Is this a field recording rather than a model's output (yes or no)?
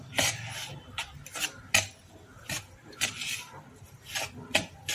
yes